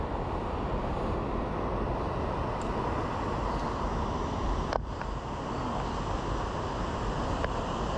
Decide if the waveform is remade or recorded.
recorded